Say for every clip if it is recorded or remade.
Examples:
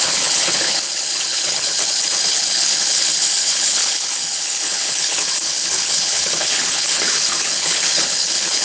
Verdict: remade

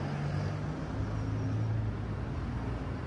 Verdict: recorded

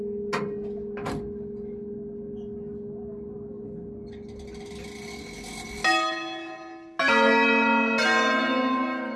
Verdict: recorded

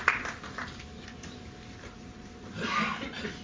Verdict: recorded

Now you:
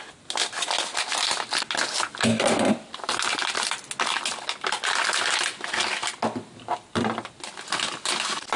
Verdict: recorded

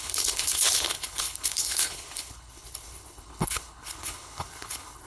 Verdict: remade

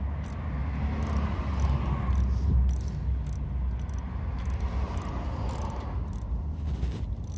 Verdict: recorded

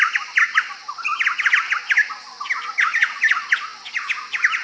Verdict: recorded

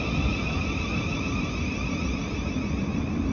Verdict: recorded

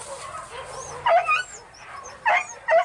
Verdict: recorded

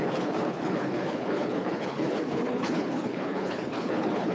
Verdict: remade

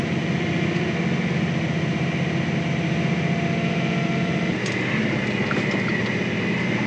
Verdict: recorded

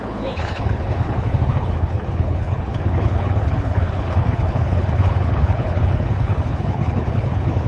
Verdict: remade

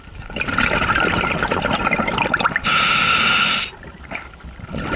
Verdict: recorded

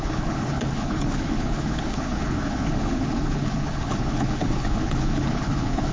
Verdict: remade